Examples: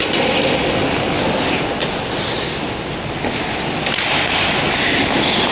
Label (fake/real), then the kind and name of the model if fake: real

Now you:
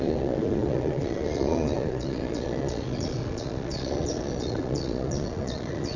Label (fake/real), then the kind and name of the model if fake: fake, vocoder, Vocos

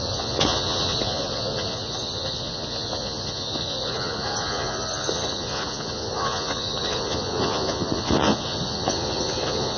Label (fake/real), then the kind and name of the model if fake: fake, vocoder, Vocos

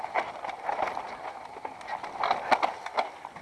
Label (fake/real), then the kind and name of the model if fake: real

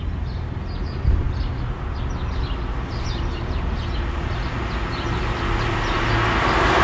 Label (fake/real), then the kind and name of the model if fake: real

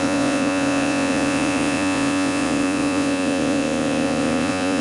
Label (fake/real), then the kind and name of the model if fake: fake, vocoder, Vocos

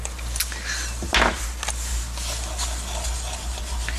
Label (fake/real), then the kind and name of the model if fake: real